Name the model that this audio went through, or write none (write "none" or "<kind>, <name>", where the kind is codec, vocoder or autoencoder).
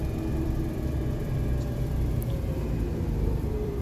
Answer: vocoder, BigVGAN v2